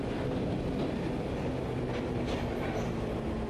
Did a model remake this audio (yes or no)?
no